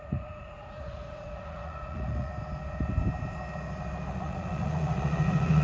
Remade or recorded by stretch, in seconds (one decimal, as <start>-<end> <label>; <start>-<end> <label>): 0.0-2.3 remade; 2.3-4.1 recorded; 4.1-5.6 remade